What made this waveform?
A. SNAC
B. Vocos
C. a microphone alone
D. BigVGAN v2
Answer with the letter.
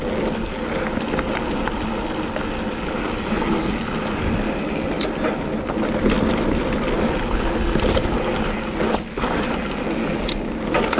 C